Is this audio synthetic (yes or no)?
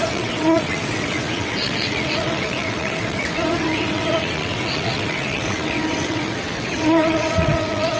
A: yes